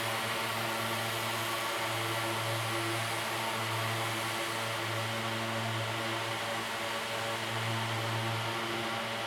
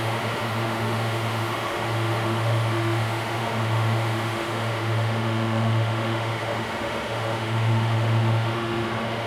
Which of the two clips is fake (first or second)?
second